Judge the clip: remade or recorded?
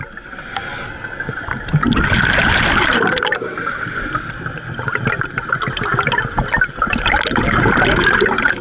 recorded